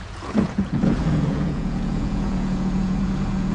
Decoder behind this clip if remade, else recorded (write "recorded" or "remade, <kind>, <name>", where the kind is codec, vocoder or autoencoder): remade, vocoder, Vocos